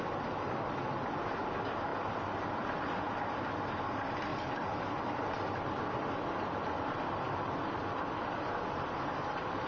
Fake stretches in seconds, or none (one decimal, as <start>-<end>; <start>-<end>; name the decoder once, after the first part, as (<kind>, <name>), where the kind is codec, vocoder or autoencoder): none